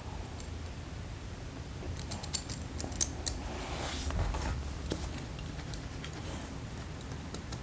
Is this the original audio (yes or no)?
yes